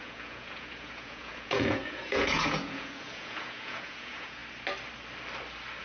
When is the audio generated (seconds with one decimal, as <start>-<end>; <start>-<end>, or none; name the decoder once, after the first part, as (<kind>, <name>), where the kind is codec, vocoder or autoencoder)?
0.0-4.4 (vocoder, Vocos)